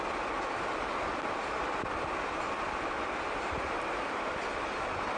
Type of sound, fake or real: real